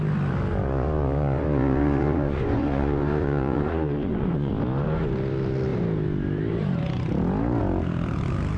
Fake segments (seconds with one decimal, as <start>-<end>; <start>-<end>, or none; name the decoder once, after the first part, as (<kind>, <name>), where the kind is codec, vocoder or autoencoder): 0.5-4.5 (vocoder, Vocos)